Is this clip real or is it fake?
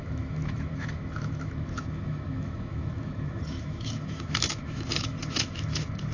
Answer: fake